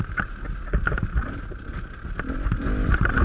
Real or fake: real